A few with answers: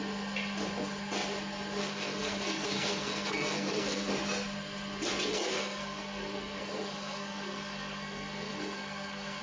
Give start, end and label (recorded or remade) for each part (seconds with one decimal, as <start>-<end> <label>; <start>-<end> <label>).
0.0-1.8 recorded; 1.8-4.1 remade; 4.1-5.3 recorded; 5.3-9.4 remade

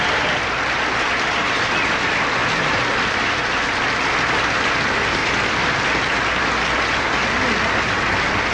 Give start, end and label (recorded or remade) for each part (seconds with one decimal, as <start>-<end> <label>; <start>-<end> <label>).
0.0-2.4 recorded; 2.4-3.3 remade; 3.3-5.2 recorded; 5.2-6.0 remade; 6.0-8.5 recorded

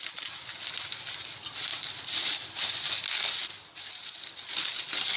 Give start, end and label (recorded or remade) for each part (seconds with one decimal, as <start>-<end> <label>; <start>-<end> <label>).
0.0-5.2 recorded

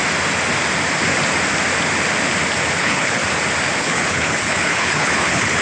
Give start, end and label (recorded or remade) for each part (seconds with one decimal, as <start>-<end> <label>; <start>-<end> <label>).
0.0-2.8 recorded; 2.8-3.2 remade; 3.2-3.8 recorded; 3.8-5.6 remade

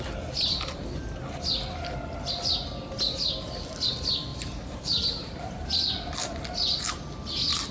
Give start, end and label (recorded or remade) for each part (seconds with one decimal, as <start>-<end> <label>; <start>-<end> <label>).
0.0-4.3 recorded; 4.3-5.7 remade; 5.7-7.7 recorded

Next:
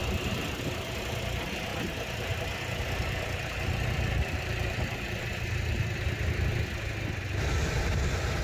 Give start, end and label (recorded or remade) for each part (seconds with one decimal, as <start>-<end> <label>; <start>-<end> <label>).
0.0-8.4 remade

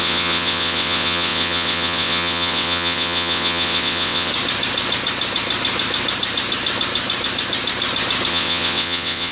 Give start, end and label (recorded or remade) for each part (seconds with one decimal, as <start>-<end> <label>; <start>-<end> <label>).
0.0-4.3 remade; 4.3-8.3 recorded; 8.3-9.3 remade

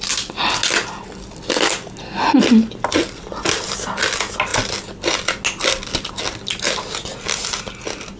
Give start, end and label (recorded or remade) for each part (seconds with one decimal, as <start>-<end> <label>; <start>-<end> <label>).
0.0-8.2 recorded